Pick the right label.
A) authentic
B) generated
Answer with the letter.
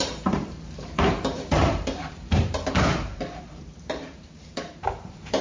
B